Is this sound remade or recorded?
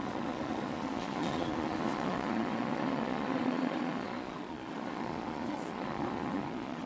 remade